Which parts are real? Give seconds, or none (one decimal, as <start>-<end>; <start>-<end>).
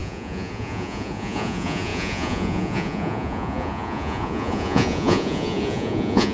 none